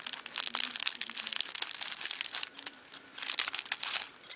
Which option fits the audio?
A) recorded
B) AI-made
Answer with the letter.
A